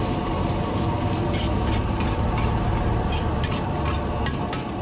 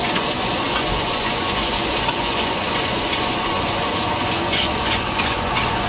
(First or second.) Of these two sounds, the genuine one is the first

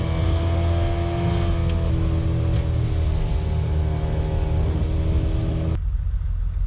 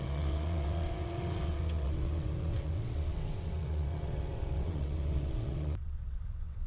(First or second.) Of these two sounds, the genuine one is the first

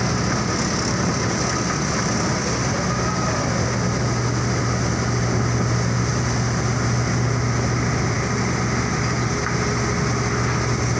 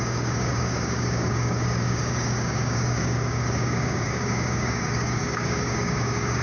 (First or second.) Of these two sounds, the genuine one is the first